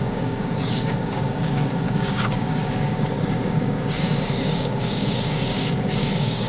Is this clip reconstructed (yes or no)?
yes